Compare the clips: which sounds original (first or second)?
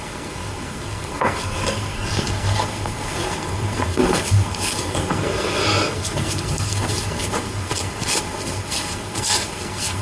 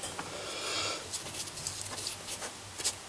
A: second